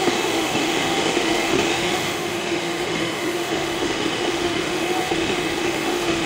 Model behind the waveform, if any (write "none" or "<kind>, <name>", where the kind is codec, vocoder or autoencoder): autoencoder, DAC-VAE